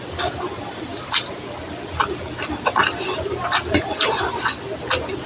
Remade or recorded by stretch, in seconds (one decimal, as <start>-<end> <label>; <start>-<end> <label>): 0.0-5.3 recorded